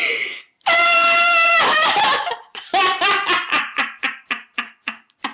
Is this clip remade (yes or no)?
yes